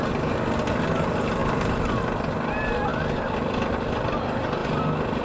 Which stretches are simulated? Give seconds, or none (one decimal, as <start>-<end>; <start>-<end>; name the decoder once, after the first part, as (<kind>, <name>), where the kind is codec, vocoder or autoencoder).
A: 1.4-2.0 (vocoder, BigVGAN v2)

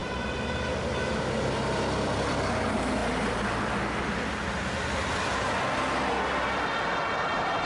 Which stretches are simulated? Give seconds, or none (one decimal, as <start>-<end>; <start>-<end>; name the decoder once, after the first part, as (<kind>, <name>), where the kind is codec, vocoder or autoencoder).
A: none

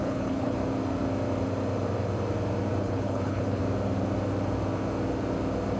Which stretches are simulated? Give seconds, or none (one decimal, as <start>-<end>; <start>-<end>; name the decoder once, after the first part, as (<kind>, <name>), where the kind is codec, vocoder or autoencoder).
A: 0.0-0.6 (codec, HILCodec); 2.8-3.6